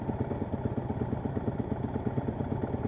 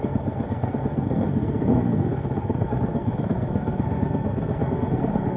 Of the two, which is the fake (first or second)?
second